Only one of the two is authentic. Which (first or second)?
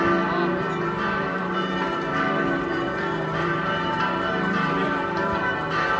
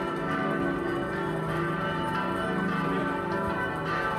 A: second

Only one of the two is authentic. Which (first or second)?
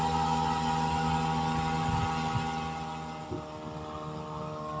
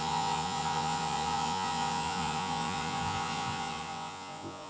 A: first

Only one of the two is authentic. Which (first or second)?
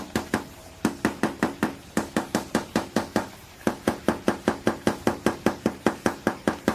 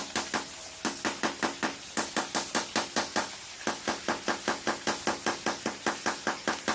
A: second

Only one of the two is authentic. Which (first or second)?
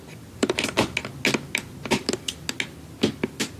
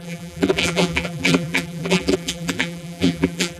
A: first